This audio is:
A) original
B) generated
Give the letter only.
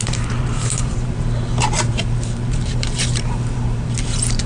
B